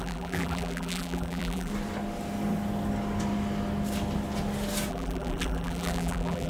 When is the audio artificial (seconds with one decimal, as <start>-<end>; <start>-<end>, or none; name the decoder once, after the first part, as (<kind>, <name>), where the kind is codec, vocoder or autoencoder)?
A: 0.0-1.7 (vocoder, BigVGAN v2); 4.9-6.5